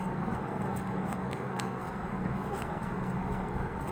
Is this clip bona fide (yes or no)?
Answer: no